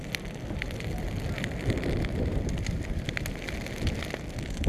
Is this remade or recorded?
recorded